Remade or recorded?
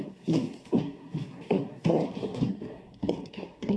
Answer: remade